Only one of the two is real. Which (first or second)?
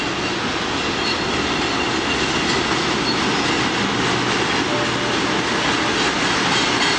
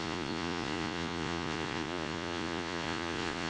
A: first